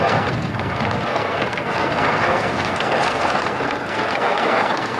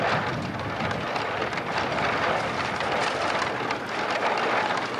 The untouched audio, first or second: second